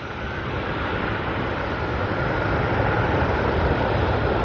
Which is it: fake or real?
real